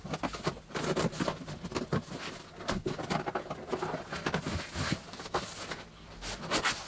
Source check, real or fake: real